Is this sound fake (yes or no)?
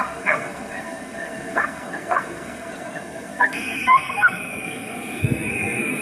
yes